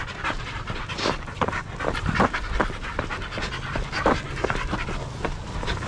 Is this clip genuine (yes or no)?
yes